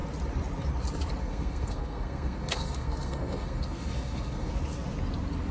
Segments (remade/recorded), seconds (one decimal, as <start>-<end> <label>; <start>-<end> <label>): 0.0-1.2 recorded; 1.2-4.5 remade; 4.5-5.5 recorded